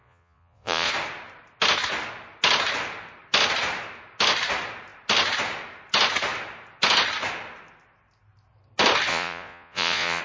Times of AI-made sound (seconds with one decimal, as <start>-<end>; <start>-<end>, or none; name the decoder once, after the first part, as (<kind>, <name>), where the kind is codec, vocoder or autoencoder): 0.0-0.9 (vocoder, Vocos); 9.1-10.2